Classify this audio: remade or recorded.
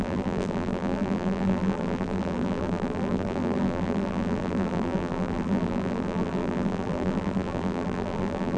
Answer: remade